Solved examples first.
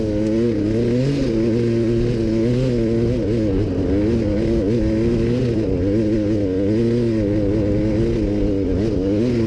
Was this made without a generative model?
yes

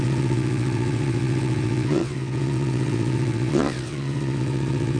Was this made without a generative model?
no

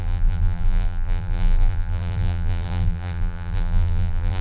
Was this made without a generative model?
no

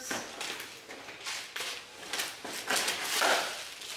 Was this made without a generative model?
yes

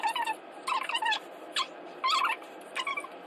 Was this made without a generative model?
yes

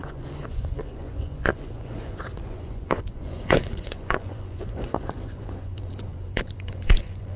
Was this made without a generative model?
no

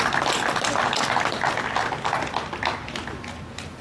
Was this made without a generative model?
yes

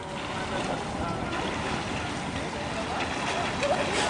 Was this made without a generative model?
yes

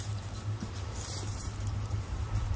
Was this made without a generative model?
no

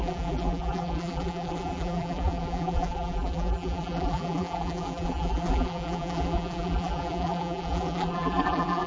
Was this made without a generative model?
no